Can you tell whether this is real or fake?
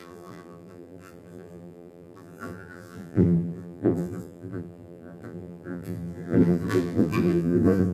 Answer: fake